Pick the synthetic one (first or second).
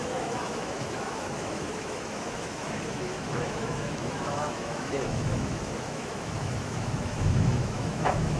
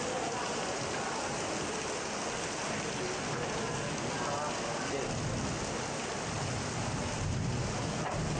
first